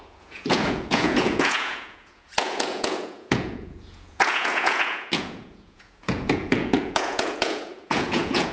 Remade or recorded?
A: remade